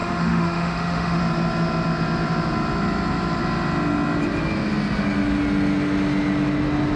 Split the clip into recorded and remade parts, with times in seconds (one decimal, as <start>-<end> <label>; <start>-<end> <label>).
0.0-1.2 remade; 1.2-7.0 recorded